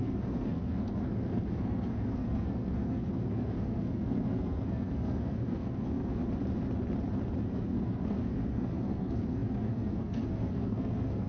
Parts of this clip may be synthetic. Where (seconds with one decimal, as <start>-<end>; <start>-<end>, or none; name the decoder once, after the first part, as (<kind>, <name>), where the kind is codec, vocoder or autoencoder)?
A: 0.0-6.2 (codec, SNAC); 7.4-11.3